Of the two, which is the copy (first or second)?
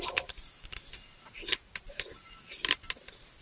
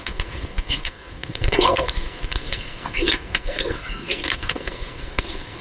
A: second